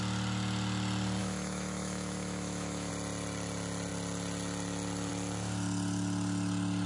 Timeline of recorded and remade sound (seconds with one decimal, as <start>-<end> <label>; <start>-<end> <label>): 0.0-1.2 recorded; 1.2-2.9 remade; 2.9-6.9 recorded